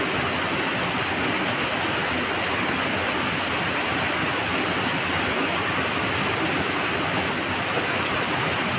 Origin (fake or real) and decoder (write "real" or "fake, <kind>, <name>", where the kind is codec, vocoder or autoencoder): real